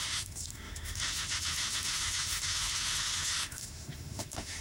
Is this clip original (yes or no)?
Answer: no